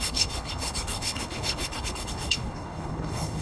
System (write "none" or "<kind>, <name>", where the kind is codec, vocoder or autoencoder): codec, HILCodec